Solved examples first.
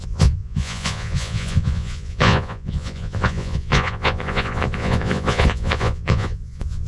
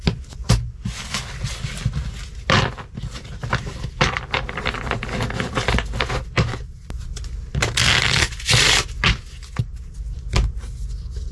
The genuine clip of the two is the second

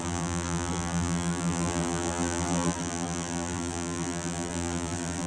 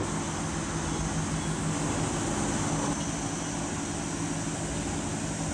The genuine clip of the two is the second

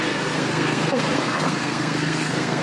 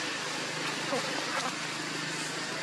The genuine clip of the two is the second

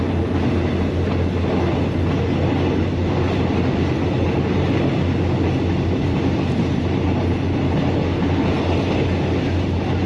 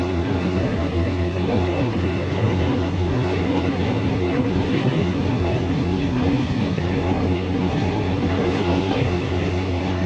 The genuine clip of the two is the first